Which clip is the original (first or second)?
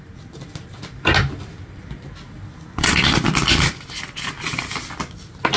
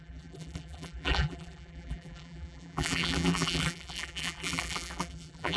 first